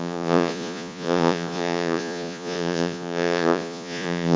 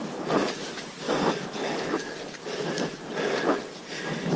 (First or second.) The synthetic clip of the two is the first